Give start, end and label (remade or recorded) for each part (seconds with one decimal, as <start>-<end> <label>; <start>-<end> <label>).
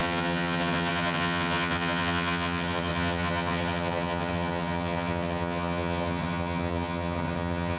0.0-7.8 remade